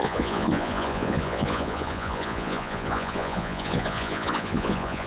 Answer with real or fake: fake